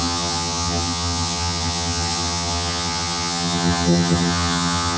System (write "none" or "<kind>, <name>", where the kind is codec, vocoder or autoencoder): vocoder, HiFi-GAN